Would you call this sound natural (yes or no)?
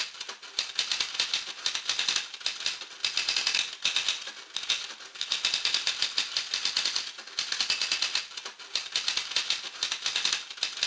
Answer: yes